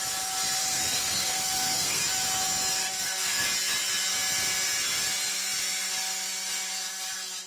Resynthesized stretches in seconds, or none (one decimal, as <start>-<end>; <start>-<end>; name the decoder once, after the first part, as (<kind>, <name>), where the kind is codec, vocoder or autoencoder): 0.6-2.0 (codec, SNAC); 2.8-3.4